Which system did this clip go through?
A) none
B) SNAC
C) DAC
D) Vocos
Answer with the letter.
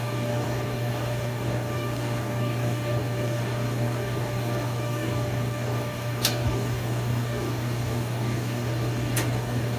C